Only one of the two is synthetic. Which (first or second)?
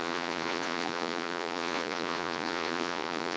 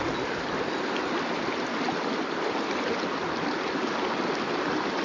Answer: first